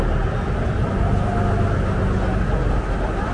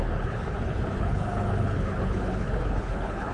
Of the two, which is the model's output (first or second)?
second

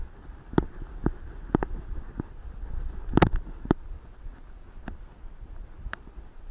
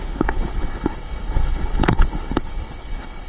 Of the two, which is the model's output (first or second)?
second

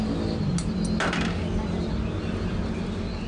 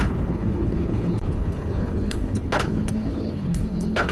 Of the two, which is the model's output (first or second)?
second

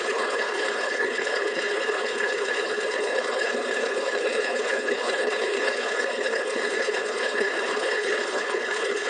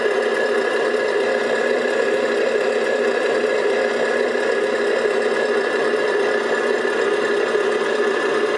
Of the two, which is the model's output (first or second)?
first